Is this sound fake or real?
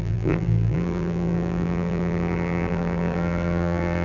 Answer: fake